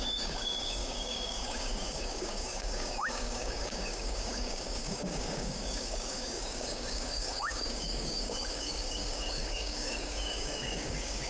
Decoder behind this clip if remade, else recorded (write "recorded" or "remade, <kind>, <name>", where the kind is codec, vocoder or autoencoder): remade, codec, DAC